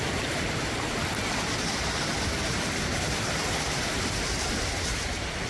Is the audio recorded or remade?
remade